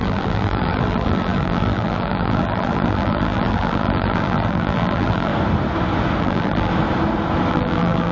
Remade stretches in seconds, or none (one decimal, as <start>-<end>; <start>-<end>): 0.0-5.3; 6.2-6.7; 7.5-8.1